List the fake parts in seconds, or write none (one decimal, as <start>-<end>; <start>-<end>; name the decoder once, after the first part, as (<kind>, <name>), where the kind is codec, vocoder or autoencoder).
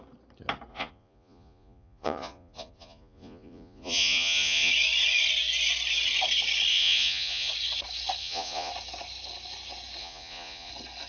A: 0.7-4.7 (vocoder, Vocos); 6.7-7.5; 8.2-8.7; 10.0-10.7